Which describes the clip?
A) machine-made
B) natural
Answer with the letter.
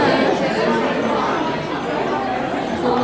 B